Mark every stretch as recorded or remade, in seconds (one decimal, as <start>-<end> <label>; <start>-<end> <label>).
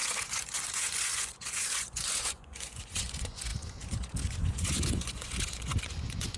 0.0-6.4 remade